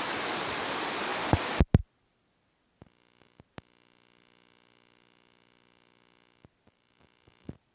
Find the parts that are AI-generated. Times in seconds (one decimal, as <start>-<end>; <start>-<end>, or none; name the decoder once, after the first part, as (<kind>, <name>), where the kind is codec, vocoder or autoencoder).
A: none